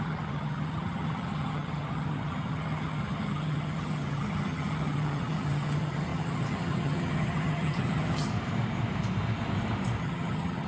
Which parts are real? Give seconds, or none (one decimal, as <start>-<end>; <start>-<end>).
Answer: 8.3-10.0